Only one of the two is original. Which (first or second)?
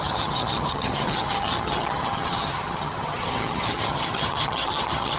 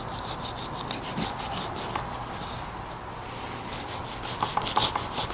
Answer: second